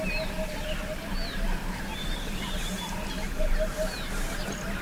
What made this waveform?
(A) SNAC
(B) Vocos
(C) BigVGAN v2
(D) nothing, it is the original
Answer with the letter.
D